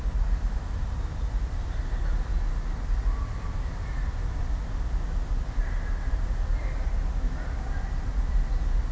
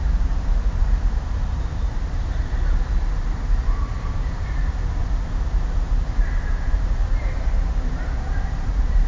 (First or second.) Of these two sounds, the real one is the first